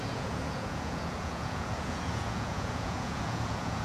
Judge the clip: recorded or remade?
remade